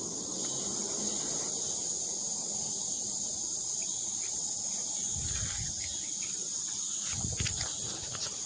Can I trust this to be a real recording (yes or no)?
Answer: yes